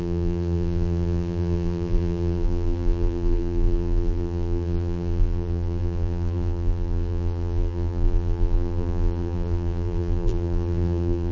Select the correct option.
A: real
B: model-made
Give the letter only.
B